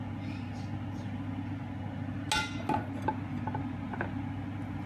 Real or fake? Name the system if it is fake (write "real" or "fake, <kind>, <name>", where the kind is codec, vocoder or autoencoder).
real